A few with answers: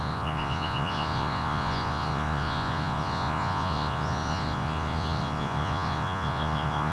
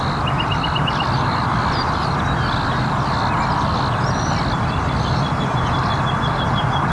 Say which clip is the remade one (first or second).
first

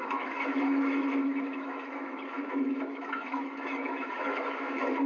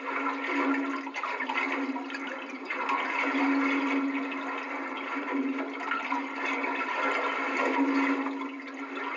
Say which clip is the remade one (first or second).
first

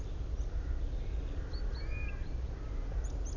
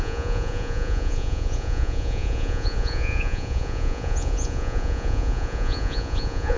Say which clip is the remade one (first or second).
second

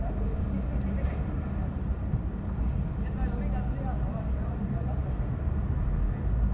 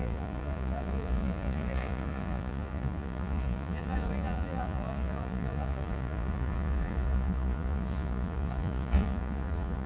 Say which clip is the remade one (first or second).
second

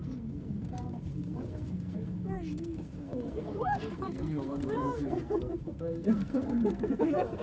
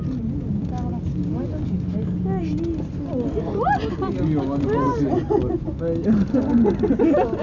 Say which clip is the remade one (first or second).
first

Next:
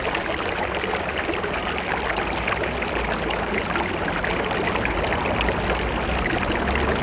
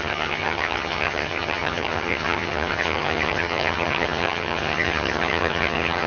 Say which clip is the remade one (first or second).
second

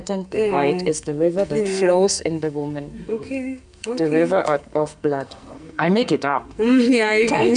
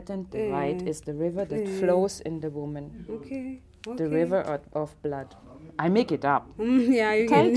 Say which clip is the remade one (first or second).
first